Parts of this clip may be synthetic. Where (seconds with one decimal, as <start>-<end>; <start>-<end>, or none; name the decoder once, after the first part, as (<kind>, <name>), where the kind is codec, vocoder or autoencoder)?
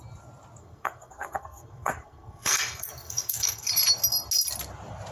0.6-3.7 (codec, SNAC)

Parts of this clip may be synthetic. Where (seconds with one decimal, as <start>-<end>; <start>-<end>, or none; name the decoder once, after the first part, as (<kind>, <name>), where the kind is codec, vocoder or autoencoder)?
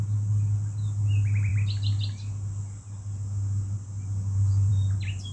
none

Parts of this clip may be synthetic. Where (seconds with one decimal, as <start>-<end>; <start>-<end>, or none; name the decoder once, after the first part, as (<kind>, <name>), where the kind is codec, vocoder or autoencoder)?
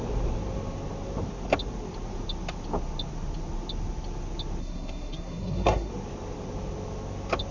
4.6-5.9 (codec, SNAC)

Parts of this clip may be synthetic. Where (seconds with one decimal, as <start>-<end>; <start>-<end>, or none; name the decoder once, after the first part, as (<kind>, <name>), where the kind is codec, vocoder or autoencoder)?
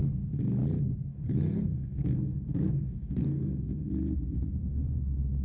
1.1-3.9 (codec, SNAC); 4.6-5.4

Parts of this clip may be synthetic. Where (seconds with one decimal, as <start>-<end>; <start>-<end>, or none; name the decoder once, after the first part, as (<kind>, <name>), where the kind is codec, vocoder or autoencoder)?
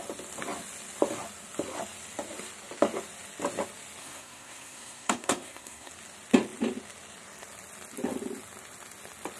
4.0-5.9 (codec, SNAC)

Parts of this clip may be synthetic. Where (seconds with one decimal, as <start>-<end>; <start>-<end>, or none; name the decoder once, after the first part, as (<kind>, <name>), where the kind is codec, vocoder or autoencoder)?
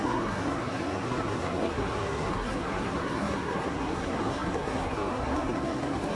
0.0-6.1 (codec, SNAC)